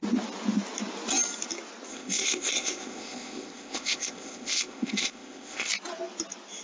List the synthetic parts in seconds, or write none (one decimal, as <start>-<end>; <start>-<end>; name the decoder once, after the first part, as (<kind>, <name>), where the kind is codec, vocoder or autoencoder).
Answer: 1.9-5.7 (codec, ZipCodec)

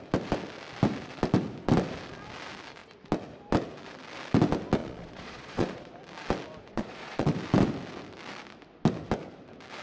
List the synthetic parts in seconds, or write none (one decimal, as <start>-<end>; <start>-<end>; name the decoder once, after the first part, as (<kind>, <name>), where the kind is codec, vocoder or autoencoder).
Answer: 4.8-5.9 (vocoder, Vocos); 6.7-7.3

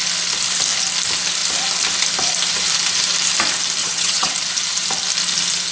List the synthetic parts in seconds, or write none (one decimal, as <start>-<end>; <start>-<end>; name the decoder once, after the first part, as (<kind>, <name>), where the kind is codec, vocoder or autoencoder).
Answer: 3.8-4.3 (vocoder, HiFi-GAN)

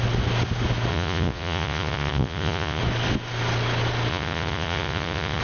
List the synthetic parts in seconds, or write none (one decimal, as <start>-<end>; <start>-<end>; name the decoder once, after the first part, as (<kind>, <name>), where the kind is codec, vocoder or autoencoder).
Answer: 0.9-2.8 (vocoder, Vocos); 4.1-5.4

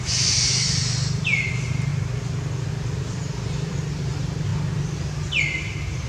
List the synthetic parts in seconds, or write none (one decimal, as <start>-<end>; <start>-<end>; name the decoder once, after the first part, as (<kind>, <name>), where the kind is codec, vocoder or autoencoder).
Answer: 0.0-1.9 (vocoder, BigVGAN v2); 2.7-4.5; 5.4-6.1

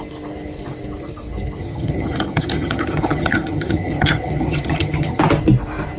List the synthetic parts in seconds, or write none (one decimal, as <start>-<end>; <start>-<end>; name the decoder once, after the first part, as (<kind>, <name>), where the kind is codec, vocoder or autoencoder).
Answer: 1.6-5.2 (vocoder, HiFi-GAN)

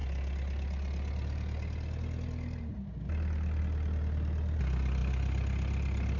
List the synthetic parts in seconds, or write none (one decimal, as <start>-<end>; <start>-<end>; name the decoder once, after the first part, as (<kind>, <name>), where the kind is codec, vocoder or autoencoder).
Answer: none

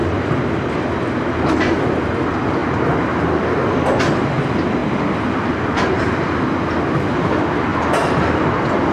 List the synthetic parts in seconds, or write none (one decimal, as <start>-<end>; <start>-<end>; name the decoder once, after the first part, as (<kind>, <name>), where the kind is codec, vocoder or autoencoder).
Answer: 2.6-4.0 (vocoder, BigVGAN v2); 4.8-5.5; 7.7-8.3